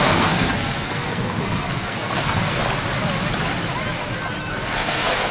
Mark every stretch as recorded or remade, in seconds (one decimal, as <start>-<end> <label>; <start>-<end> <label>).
0.0-2.6 remade; 2.6-4.5 recorded; 4.5-5.3 remade